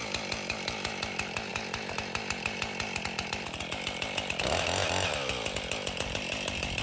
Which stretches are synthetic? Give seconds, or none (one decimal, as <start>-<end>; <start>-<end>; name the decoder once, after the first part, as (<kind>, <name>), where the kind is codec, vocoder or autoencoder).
none